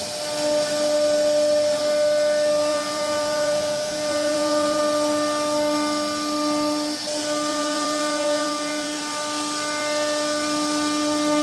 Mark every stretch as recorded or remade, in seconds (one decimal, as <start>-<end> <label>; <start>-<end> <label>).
0.0-2.7 recorded; 2.7-4.8 remade; 4.8-7.5 recorded; 7.5-9.0 remade; 9.0-11.4 recorded